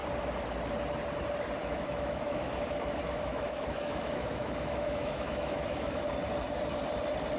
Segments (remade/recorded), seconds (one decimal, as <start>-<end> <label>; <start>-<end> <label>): 0.0-1.6 recorded; 1.6-6.0 remade; 6.0-7.4 recorded